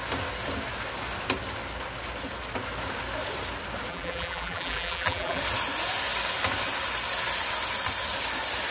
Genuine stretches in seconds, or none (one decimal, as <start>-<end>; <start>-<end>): 0.0-3.9; 5.4-8.7